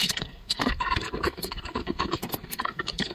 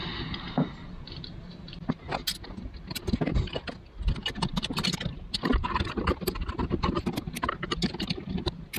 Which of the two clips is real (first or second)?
second